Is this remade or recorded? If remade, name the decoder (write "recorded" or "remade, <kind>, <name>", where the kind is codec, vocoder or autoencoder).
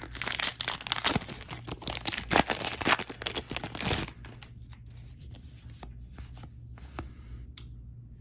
recorded